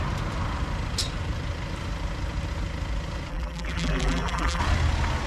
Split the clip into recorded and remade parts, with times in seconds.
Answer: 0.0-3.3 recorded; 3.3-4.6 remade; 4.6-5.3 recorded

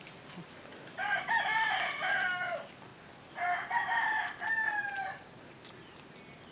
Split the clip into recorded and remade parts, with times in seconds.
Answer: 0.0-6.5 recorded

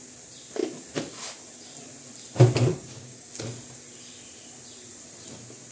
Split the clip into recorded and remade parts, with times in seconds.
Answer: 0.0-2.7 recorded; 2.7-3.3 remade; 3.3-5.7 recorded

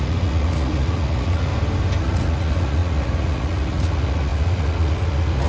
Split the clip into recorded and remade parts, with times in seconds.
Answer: 0.0-1.5 remade; 1.5-2.0 recorded; 2.0-5.5 remade

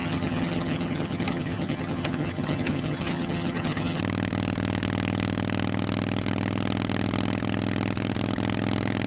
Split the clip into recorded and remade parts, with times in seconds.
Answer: 0.0-4.0 remade; 4.0-9.1 recorded

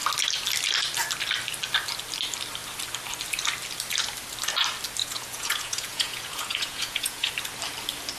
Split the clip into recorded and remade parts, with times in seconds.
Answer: 0.0-5.0 recorded; 5.0-7.3 remade; 7.3-8.2 recorded